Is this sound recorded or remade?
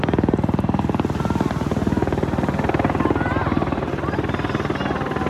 recorded